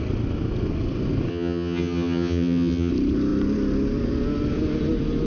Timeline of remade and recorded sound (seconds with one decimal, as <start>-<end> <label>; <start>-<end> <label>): 0.0-1.3 recorded; 1.3-2.9 remade; 2.9-5.3 recorded